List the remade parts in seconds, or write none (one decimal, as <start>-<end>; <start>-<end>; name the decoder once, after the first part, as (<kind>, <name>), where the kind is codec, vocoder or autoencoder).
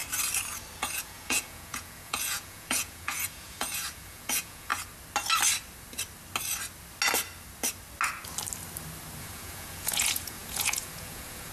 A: 0.8-4.7 (vocoder, Vocos); 9.2-11.5